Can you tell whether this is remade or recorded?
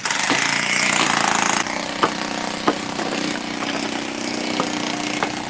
recorded